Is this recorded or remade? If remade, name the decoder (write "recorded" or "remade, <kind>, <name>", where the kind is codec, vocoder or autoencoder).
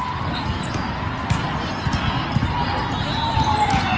recorded